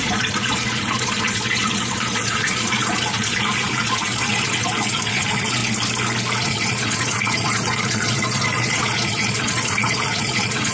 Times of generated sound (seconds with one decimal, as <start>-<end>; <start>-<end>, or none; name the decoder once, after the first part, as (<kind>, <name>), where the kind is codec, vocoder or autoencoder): 0.0-5.6 (vocoder, Vocos); 6.4-10.7